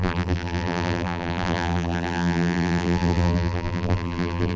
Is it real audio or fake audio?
fake